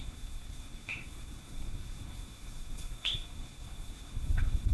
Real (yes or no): no